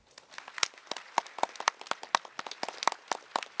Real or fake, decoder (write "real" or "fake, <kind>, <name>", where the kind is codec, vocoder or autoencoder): real